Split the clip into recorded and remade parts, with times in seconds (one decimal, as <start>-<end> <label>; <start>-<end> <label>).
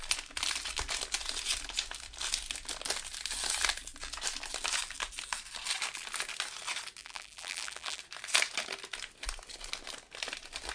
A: 0.0-7.0 recorded; 7.0-8.0 remade; 8.0-10.7 recorded